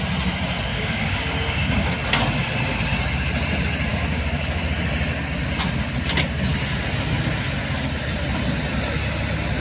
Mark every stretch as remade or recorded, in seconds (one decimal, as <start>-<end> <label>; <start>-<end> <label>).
0.0-0.7 recorded; 0.7-1.9 remade; 1.9-3.9 recorded; 3.9-4.6 remade; 4.6-9.6 recorded